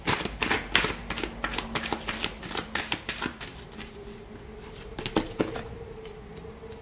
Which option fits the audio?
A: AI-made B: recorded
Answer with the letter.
A